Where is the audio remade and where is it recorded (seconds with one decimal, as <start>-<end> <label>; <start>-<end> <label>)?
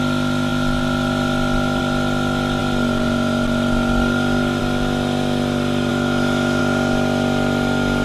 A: 0.0-5.9 recorded; 5.9-6.6 remade; 6.6-8.0 recorded